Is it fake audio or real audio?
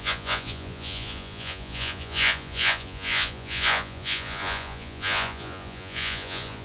fake